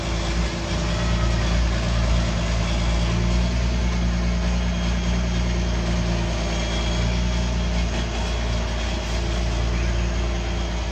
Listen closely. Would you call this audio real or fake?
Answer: real